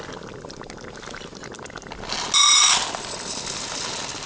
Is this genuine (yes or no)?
yes